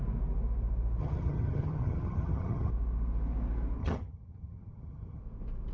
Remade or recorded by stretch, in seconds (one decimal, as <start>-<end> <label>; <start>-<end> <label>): 0.0-1.0 recorded; 1.0-2.7 remade; 2.7-3.8 recorded; 3.8-5.2 remade; 5.2-5.7 recorded